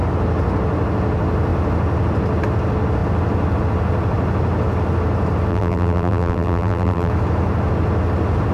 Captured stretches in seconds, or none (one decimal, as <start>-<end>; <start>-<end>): 0.0-5.5; 7.1-8.5